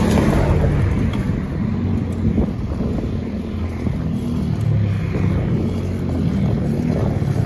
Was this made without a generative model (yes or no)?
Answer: yes